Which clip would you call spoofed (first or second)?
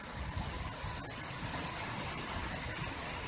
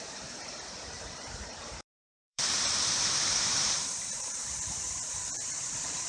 second